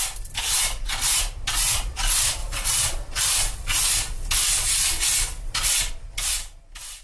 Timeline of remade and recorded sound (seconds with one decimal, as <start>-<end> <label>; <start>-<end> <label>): 0.0-2.4 recorded; 2.4-3.0 remade; 3.0-7.0 recorded